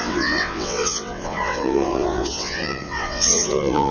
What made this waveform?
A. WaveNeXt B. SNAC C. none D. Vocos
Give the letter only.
A